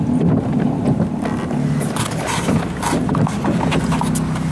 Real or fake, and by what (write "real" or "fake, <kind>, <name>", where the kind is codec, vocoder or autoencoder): real